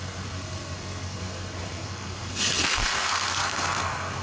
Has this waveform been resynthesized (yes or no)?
yes